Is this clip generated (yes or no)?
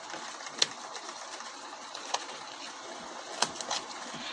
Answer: yes